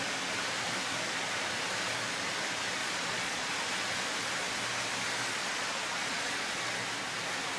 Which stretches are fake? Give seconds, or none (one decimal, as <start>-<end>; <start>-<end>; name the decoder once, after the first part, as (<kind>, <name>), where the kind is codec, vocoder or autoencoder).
2.8-3.5 (vocoder, Vocos); 5.4-6.5